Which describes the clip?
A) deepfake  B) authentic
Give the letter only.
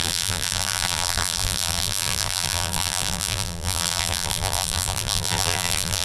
A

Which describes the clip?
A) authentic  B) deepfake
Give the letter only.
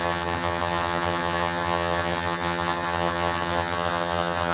B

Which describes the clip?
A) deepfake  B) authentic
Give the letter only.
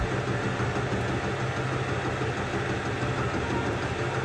B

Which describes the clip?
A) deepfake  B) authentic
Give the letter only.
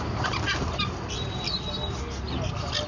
B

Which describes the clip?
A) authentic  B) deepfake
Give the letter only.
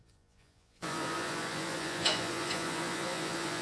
B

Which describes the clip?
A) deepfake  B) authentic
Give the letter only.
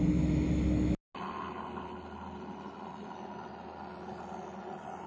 B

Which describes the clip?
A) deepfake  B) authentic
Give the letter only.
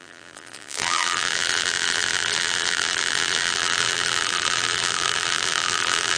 A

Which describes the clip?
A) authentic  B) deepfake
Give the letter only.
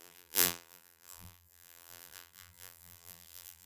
B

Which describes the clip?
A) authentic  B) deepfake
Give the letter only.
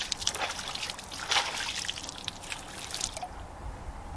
A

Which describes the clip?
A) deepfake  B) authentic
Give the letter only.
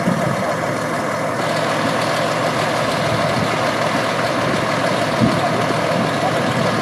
B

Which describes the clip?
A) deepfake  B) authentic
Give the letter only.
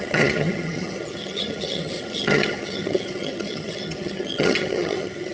A